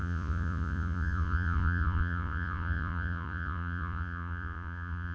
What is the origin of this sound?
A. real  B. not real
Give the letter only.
B